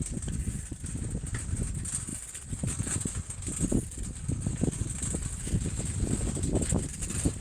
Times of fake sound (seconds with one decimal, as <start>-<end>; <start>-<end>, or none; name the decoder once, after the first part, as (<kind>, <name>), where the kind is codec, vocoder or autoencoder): none